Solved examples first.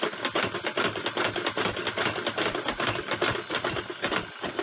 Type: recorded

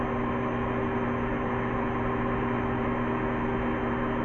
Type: recorded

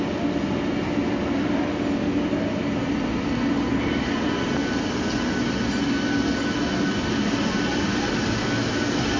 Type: recorded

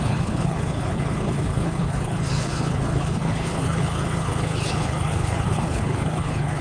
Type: remade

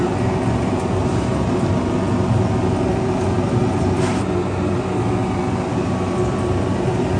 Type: recorded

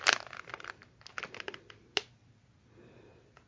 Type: recorded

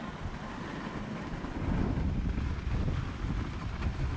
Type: recorded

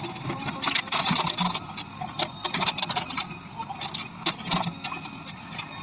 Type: recorded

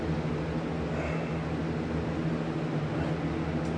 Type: recorded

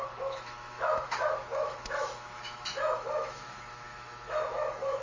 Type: remade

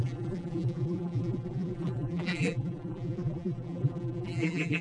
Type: remade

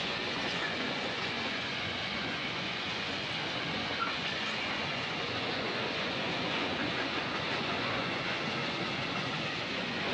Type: remade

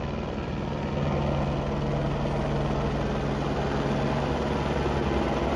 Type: recorded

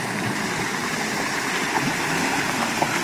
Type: recorded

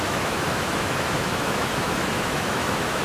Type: remade